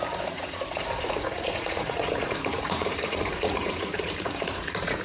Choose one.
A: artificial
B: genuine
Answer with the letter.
A